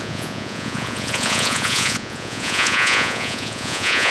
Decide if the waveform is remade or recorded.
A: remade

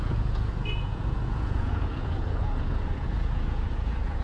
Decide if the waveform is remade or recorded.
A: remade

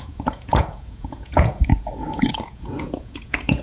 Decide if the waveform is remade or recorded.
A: remade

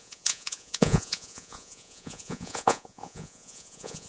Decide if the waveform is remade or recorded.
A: remade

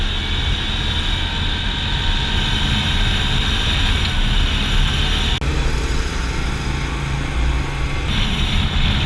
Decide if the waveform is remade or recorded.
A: recorded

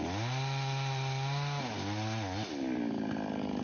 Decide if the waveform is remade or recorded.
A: recorded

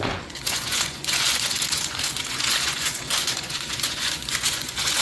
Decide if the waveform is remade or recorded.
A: remade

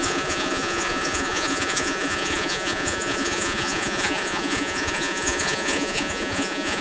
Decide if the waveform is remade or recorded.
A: remade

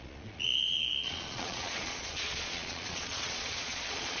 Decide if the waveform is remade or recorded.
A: remade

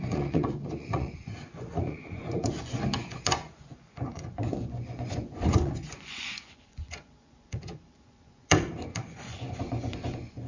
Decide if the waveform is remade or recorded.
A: remade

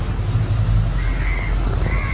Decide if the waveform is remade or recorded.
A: recorded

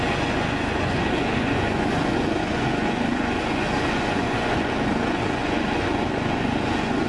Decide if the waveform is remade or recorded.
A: remade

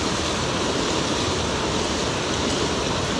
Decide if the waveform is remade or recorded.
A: recorded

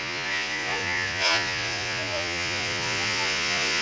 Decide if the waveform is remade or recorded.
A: remade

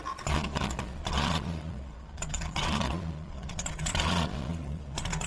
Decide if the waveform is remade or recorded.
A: remade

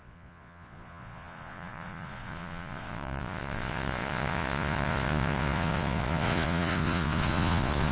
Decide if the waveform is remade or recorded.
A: remade